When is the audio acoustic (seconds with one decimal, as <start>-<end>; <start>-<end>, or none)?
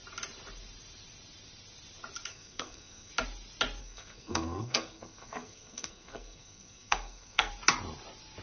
0.0-2.3; 3.1-3.8; 7.5-8.4